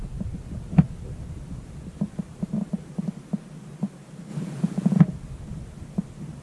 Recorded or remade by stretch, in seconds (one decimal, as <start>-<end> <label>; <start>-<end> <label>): 0.0-4.3 recorded; 4.3-5.0 remade; 5.0-6.4 recorded